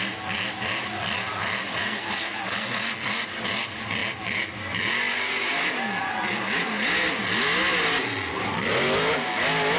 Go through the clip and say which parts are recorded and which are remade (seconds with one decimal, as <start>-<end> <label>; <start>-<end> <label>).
0.0-1.8 recorded; 1.8-3.1 remade; 3.1-9.8 recorded